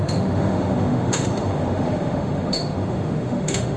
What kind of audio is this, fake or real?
fake